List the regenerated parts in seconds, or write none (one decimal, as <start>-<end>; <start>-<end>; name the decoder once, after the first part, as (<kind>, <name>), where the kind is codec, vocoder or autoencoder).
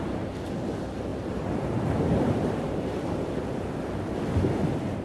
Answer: 1.1-3.0 (vocoder, BigVGAN v2)